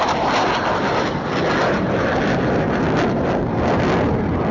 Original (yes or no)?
yes